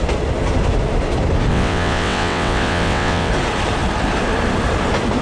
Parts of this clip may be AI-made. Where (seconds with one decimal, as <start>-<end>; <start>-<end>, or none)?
1.5-3.3